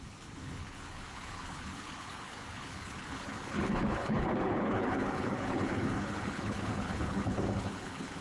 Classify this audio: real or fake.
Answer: fake